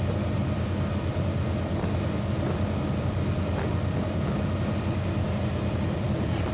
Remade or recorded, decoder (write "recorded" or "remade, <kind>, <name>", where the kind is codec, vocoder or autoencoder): recorded